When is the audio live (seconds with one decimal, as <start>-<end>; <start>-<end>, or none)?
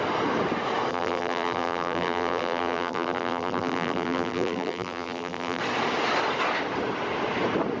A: 0.0-0.9; 5.6-7.8